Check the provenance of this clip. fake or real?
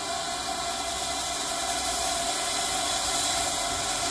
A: real